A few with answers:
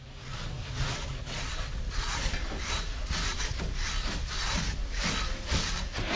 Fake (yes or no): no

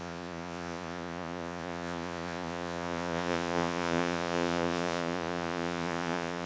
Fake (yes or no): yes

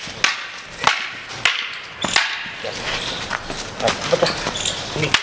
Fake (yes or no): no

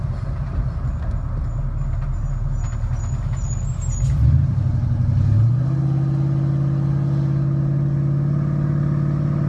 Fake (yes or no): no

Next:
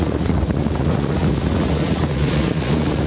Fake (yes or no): yes